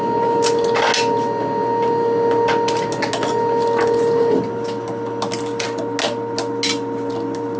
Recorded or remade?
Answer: recorded